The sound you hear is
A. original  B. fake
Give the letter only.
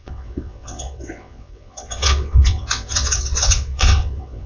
B